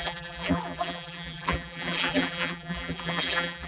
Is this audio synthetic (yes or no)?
yes